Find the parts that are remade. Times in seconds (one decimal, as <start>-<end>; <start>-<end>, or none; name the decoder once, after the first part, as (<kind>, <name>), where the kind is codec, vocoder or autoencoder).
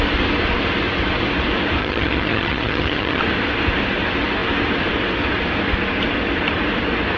1.8-3.2 (vocoder, HiFi-GAN)